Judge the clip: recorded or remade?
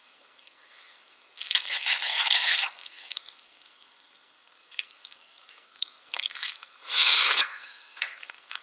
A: remade